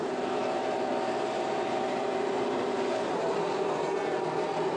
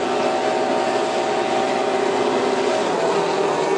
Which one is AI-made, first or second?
first